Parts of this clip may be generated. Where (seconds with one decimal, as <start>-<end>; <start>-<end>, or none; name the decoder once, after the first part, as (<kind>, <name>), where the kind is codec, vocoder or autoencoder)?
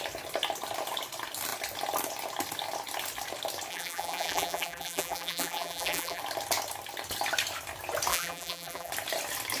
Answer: 3.7-6.2 (vocoder, BigVGAN v2); 8.1-8.9